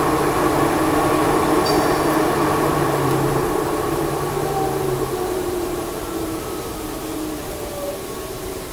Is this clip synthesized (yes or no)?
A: yes